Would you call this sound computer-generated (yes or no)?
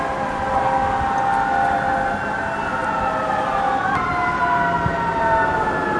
no